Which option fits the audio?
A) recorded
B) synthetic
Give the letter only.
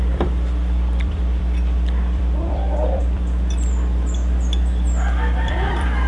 B